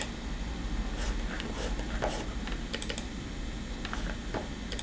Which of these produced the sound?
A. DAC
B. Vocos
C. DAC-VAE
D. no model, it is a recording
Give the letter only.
D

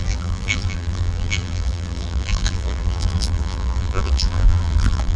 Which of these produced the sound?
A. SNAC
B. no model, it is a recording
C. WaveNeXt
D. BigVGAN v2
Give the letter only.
D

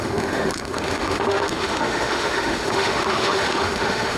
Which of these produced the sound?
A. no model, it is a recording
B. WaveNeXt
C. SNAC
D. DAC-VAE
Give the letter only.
D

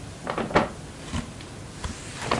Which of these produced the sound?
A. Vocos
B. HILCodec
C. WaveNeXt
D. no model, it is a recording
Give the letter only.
D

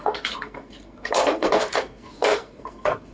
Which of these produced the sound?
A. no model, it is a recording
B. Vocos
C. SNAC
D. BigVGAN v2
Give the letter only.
C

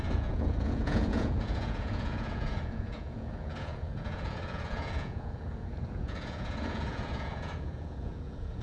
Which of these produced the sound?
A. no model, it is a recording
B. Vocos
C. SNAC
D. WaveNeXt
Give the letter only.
B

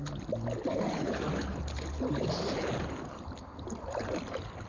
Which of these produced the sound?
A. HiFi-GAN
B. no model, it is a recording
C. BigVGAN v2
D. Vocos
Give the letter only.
B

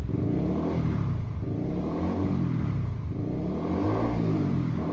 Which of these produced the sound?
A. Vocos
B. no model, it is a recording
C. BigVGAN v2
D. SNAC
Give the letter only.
B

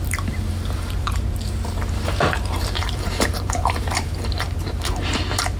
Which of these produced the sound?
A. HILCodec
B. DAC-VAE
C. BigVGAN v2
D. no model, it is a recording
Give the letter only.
C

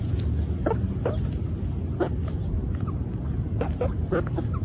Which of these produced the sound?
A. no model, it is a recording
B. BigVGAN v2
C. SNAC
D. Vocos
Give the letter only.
A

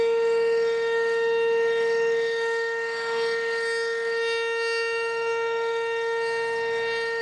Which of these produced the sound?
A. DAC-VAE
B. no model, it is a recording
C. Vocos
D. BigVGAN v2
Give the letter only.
A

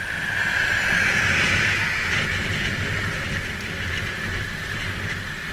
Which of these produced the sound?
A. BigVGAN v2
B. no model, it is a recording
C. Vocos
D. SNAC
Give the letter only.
B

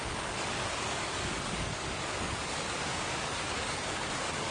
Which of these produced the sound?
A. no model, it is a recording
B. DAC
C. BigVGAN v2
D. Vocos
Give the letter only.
B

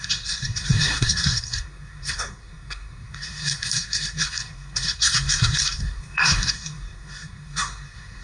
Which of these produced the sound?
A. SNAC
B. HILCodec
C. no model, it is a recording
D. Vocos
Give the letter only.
A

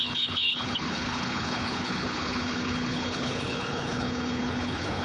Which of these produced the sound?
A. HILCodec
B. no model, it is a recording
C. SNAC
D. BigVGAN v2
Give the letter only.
A